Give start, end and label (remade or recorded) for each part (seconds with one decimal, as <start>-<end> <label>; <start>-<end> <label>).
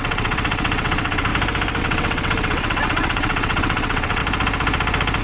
0.0-1.3 remade; 1.3-1.8 recorded; 1.8-4.2 remade; 4.2-5.2 recorded